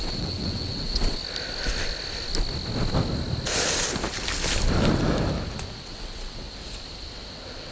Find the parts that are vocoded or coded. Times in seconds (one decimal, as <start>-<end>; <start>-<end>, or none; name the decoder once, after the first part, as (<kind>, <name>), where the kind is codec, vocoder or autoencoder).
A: 0.0-1.2 (vocoder, WaveNeXt); 5.8-6.6; 7.3-7.7